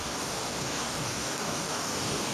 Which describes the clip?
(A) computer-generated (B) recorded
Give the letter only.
A